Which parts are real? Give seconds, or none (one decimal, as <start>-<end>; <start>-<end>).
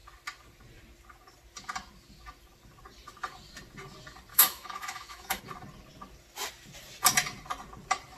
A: 0.0-4.3; 5.4-8.2